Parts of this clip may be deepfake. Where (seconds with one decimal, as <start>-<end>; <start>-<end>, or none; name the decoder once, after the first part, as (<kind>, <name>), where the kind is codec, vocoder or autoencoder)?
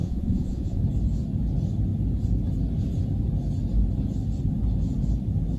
0.0-0.8 (vocoder, Vocos)